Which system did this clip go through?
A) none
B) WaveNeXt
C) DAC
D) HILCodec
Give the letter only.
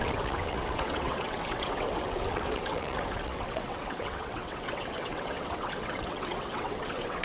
B